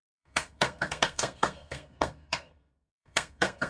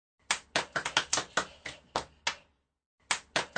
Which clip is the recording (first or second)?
second